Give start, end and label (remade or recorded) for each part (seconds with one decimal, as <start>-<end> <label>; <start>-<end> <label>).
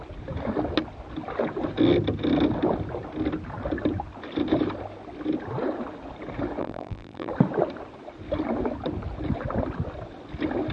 0.0-6.6 recorded; 6.6-7.3 remade; 7.3-10.7 recorded